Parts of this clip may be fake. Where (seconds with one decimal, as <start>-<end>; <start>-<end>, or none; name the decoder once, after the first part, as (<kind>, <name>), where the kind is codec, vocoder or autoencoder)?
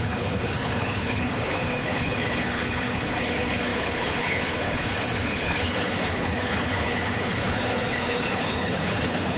0.0-9.4 (codec, HILCodec)